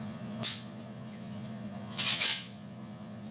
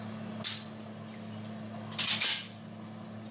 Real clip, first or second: second